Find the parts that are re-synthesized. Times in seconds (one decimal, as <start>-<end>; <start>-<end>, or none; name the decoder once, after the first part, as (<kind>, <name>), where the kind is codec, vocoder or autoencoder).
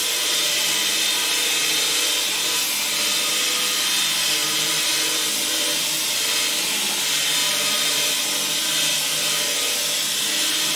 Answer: 0.0-2.1 (vocoder, BigVGAN v2); 4.4-4.9; 7.4-8.1